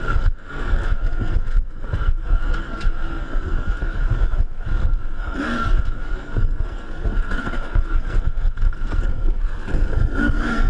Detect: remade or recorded remade